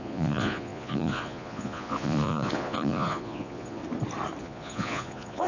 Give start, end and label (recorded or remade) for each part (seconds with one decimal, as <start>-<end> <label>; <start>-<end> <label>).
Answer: 0.0-3.8 remade; 3.8-4.4 recorded; 4.4-5.5 remade